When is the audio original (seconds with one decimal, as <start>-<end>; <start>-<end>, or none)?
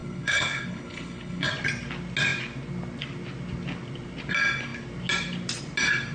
1.5-6.1